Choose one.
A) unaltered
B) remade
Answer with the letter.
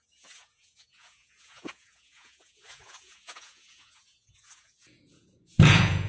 B